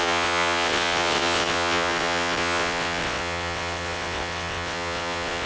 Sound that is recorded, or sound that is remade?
remade